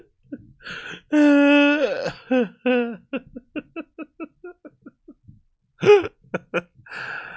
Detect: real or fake real